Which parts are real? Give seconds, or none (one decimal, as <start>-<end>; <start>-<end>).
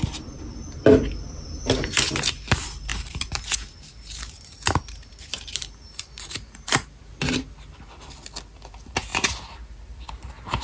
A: 0.0-2.9; 7.1-10.6